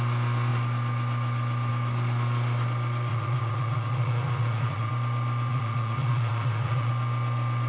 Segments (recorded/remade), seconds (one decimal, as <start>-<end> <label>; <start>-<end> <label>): 0.0-3.1 recorded; 3.1-4.9 remade; 4.9-5.5 recorded; 5.5-6.9 remade; 6.9-7.7 recorded